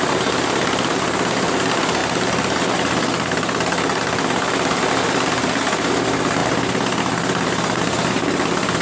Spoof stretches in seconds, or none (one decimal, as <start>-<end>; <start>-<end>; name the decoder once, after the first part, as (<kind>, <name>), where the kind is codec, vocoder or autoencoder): none